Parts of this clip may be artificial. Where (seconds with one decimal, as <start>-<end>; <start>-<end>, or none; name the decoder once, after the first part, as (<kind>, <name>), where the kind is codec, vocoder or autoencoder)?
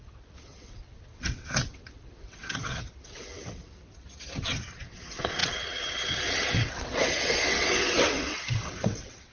0.0-9.3 (vocoder, WaveNeXt)